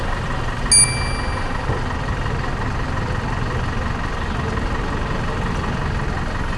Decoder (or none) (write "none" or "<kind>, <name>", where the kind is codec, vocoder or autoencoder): none